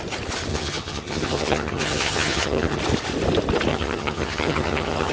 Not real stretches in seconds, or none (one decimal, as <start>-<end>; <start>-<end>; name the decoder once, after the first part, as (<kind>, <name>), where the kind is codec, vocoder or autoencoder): 0.5-2.8 (vocoder, HiFi-GAN); 3.7-5.1